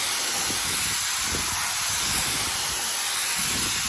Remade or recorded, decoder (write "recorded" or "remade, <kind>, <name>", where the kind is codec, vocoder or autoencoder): recorded